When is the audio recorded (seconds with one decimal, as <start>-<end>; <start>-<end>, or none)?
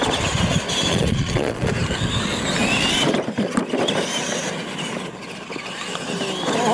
0.0-0.9; 1.7-6.7